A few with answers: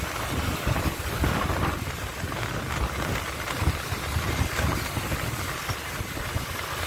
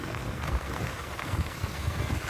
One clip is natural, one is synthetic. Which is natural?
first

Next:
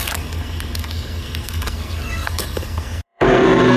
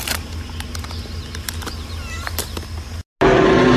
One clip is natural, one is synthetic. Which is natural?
second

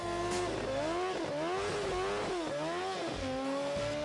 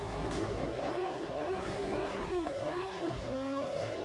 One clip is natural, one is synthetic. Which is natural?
first